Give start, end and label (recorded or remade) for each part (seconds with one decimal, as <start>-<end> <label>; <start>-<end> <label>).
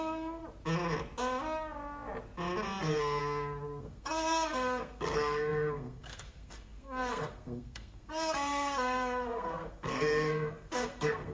0.0-0.4 remade; 0.4-2.8 recorded; 2.8-3.2 remade; 3.2-3.8 recorded; 3.8-11.3 remade